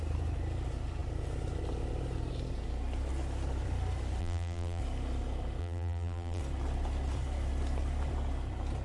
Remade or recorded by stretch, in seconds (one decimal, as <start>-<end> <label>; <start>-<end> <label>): 0.0-4.2 recorded; 4.2-4.8 remade; 4.8-5.6 recorded; 5.6-6.4 remade; 6.4-8.8 recorded